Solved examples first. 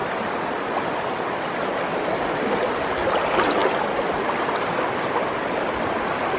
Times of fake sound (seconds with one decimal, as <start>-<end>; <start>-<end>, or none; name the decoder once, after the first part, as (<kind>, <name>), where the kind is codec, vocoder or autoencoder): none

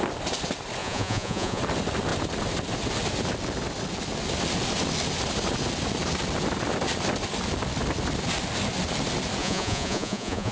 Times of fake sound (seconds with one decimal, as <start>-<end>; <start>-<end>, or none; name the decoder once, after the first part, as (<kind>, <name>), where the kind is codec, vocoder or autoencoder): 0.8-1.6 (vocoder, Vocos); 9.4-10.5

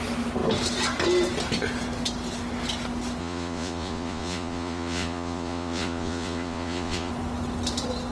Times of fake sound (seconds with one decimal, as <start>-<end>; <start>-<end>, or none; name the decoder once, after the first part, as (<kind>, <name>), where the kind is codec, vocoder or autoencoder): 3.2-7.1 (vocoder, Vocos)